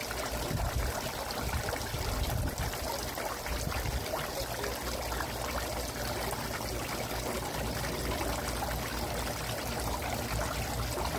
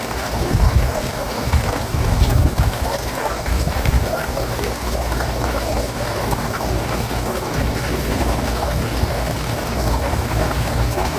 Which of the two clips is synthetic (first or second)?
second